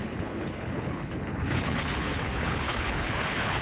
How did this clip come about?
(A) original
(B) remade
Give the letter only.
B